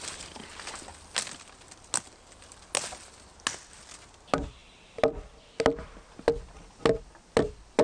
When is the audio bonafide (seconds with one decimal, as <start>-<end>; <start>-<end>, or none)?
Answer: 0.0-7.8